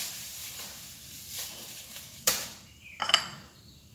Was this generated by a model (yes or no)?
yes